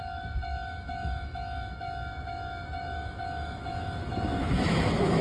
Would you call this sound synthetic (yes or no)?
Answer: yes